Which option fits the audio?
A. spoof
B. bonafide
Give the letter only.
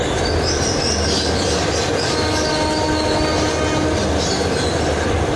B